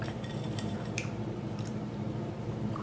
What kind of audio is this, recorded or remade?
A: remade